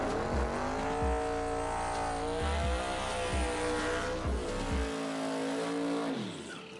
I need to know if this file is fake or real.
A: real